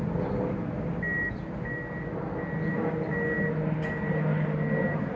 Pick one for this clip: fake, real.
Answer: real